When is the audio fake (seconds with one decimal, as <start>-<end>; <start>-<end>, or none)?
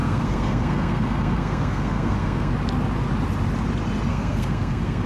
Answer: 0.0-2.5; 4.1-5.1